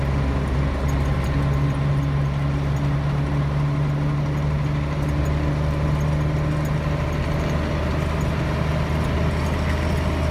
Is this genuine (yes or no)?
yes